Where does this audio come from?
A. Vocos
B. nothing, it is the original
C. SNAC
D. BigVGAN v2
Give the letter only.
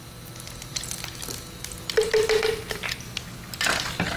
B